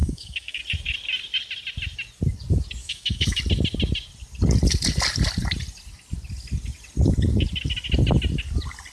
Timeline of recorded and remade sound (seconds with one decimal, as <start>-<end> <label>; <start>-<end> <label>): 0.0-0.6 remade; 0.6-2.8 recorded; 2.8-3.4 remade; 3.4-8.9 recorded